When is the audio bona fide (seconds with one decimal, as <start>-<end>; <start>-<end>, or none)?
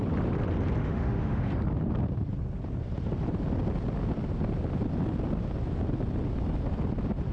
0.0-0.8; 1.5-7.3